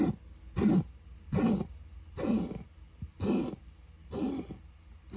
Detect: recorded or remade recorded